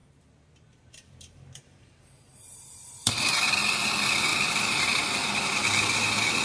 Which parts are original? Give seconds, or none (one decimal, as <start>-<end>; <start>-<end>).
3.3-4.3; 5.1-6.4